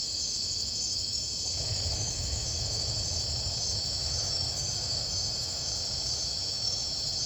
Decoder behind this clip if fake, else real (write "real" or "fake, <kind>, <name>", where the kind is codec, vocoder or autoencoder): fake, autoencoder, DAC-VAE